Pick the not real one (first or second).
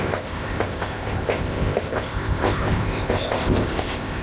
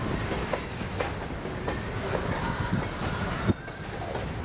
first